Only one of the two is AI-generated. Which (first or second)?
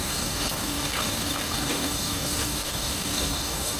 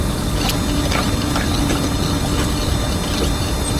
first